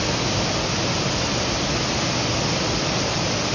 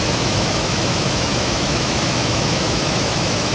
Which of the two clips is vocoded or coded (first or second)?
second